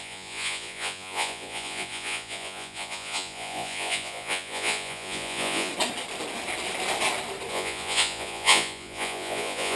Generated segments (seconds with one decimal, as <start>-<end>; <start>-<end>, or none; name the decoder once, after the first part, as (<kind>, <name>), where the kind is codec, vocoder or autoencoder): 0.0-5.7 (vocoder, Vocos); 7.5-9.8